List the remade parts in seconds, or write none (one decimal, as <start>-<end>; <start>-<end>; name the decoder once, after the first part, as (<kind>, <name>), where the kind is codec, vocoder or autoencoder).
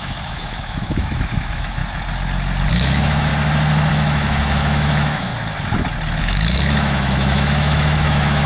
0.0-1.8 (autoencoder, DAC-VAE); 2.7-3.3; 3.9-5.3; 6.2-8.5